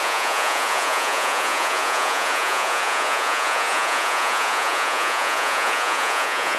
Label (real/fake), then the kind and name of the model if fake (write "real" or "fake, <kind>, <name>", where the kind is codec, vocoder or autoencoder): fake, vocoder, Vocos